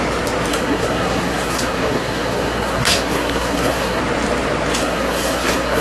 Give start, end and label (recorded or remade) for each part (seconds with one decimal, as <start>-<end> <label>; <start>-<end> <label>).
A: 0.0-0.5 recorded; 0.5-4.0 remade; 4.0-4.8 recorded; 4.8-5.8 remade